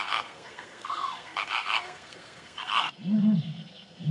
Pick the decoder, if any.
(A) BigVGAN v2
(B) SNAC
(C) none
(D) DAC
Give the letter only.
B